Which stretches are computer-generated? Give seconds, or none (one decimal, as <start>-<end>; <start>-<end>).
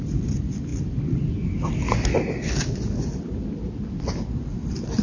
none